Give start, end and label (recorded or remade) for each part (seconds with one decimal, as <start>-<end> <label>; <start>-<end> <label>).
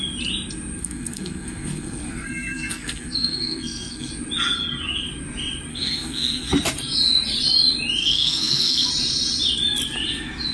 0.0-0.8 recorded; 0.8-4.1 remade; 4.1-5.7 recorded; 5.7-6.5 remade; 6.5-8.0 recorded; 8.0-8.9 remade; 8.9-10.5 recorded